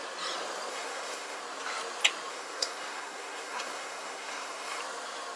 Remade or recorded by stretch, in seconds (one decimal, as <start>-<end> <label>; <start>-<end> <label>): 0.0-0.7 recorded; 0.7-1.4 remade; 1.4-2.3 recorded; 2.3-4.8 remade; 4.8-5.4 recorded